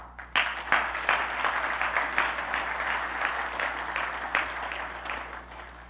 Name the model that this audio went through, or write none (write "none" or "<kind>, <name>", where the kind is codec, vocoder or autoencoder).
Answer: none